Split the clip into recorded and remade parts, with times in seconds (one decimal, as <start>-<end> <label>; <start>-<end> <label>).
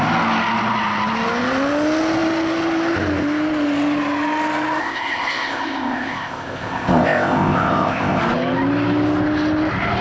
0.0-4.8 recorded; 4.8-8.2 remade; 8.2-10.0 recorded